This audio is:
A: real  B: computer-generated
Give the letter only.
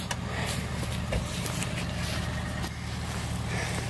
A